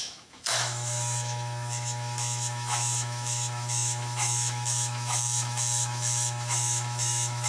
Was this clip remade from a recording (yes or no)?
yes